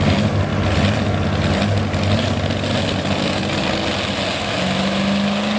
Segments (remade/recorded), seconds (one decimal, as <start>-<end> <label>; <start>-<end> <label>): 0.0-5.6 recorded